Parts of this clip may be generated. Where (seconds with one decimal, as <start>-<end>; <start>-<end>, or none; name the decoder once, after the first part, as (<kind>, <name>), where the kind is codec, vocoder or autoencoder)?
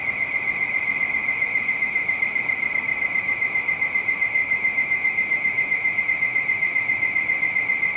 1.2-2.7 (autoencoder, DAC-VAE); 4.4-6.0